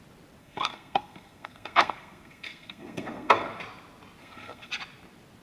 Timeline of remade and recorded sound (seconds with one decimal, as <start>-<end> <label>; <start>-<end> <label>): 0.0-0.4 recorded; 0.4-3.6 remade; 3.6-4.2 recorded; 4.2-4.7 remade; 4.7-5.4 recorded